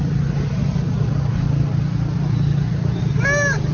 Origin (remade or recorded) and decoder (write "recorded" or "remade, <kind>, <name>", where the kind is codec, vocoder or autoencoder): recorded